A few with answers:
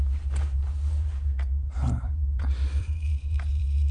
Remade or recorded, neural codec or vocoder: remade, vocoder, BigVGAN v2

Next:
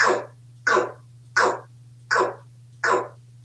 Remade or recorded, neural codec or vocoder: recorded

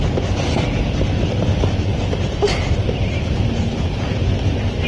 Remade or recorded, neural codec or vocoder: recorded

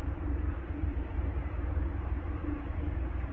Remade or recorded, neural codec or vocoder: remade, vocoder, BigVGAN v2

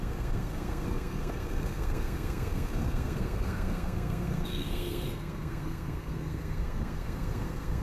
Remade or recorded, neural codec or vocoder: remade, codec, SNAC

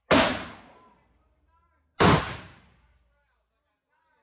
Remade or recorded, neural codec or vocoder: recorded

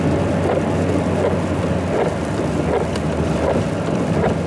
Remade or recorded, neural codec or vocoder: recorded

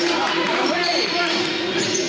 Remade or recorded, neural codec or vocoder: remade, vocoder, Vocos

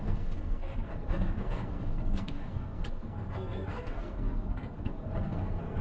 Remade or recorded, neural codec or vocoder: remade, codec, SNAC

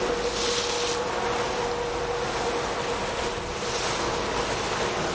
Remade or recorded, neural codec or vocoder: recorded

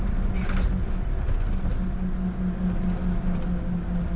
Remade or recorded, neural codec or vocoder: recorded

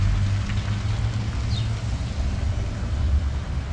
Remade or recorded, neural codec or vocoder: recorded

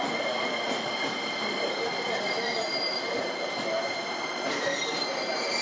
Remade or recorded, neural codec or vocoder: remade, vocoder, BigVGAN v2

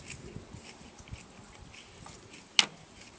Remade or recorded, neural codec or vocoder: recorded